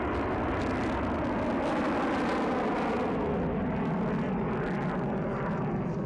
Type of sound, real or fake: real